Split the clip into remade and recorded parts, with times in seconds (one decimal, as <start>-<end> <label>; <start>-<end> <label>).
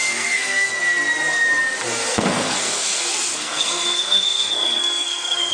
0.0-0.7 remade; 0.7-2.1 recorded; 2.1-5.5 remade